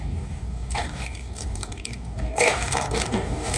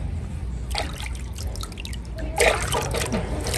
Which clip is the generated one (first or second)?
first